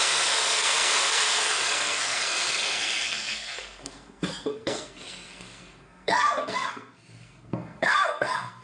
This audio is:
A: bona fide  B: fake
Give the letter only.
B